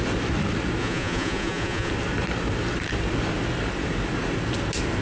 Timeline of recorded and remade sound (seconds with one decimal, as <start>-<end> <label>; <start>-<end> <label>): 0.0-0.8 recorded; 0.8-1.9 remade; 1.9-5.0 recorded